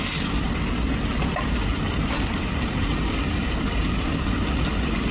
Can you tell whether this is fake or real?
real